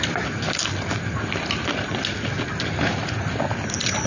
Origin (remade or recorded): recorded